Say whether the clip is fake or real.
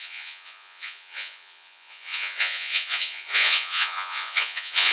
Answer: fake